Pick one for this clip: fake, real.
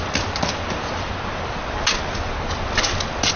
real